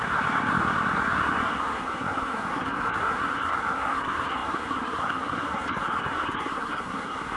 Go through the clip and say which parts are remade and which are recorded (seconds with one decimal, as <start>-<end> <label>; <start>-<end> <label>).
0.0-7.4 remade